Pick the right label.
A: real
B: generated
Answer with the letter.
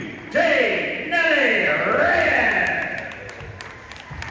B